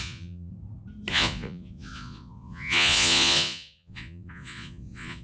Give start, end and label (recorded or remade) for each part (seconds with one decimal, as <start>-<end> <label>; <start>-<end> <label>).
0.0-0.5 remade; 0.5-1.1 recorded; 1.1-5.2 remade